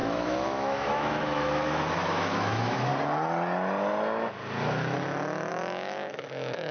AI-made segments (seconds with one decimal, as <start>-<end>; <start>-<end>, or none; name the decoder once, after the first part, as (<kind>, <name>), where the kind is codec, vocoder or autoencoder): 0.0-2.9 (autoencoder, DAC-VAE); 5.5-6.7